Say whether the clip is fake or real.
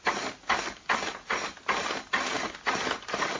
real